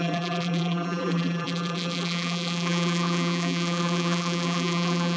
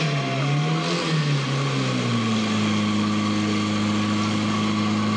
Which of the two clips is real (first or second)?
second